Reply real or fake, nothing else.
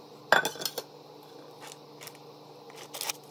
real